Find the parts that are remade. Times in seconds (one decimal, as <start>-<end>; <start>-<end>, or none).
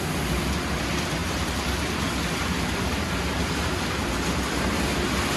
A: 1.2-4.1